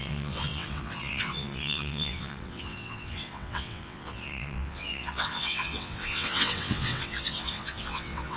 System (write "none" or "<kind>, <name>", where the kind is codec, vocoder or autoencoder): vocoder, WaveNeXt